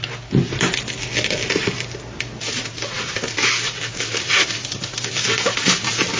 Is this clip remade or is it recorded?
recorded